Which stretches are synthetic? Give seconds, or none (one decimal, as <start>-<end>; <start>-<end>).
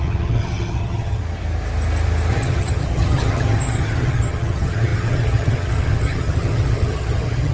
0.0-1.2; 2.3-7.5